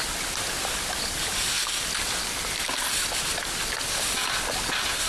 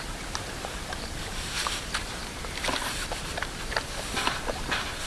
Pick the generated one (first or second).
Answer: second